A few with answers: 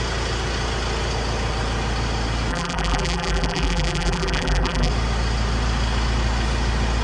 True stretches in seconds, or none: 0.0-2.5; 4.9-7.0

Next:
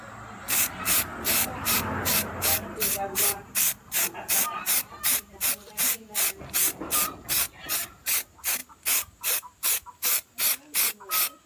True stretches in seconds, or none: 0.0-1.4; 5.5-8.6; 10.3-11.5